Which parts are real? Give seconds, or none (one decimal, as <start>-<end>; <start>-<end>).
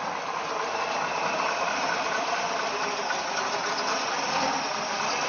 0.0-5.3